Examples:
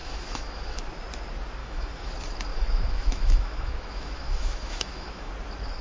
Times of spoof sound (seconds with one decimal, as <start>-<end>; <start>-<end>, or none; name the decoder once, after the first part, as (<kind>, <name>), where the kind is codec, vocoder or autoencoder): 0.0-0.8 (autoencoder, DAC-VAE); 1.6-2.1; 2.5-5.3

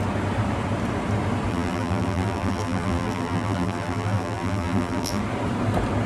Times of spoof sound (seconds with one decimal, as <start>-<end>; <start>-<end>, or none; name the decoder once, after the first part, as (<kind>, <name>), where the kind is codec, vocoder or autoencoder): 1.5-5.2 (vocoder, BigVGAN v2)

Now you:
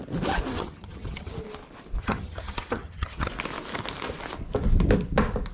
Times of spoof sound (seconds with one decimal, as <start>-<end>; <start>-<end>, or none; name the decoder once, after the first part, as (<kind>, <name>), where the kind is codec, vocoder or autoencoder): 0.5-1.3 (vocoder, HiFi-GAN); 2.0-3.3

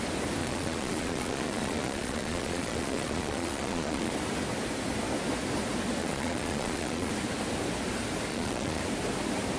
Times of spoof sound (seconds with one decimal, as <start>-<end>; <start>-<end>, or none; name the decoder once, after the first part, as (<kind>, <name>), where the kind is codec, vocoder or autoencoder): 0.4-4.1 (vocoder, Vocos); 6.0-7.1; 8.3-8.8

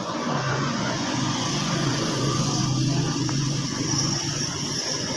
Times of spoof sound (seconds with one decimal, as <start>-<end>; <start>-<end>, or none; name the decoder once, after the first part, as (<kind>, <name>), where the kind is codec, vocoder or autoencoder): 0.0-2.6 (vocoder, Vocos); 3.3-5.2